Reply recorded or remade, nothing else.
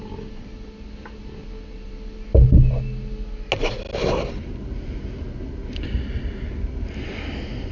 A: recorded